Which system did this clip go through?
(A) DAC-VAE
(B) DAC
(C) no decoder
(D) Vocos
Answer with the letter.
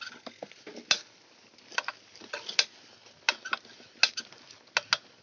C